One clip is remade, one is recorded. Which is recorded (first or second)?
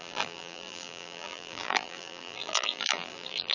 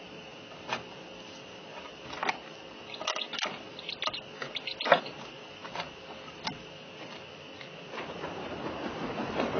second